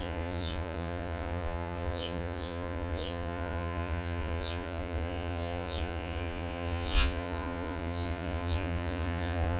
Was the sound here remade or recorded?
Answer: remade